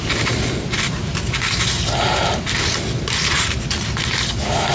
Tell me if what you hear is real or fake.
real